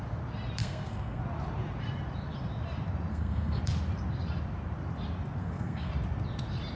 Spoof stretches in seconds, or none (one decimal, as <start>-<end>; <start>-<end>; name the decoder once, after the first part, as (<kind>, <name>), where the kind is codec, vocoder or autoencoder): 0.6-1.2 (codec, SNAC); 3.1-3.6; 5.4-5.9